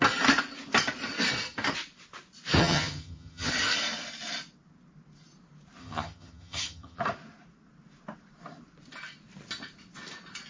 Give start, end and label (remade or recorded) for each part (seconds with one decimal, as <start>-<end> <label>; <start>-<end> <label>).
0.0-2.6 recorded; 2.6-3.5 remade; 3.5-5.8 recorded; 5.8-7.0 remade; 7.0-10.5 recorded